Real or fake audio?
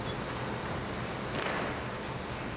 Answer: real